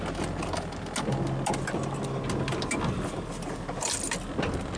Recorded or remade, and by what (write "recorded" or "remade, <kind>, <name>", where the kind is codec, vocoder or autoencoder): recorded